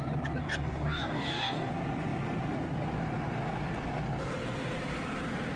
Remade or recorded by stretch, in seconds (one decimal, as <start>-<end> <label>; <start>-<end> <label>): 0.0-0.4 recorded; 0.4-1.7 remade; 1.7-5.6 recorded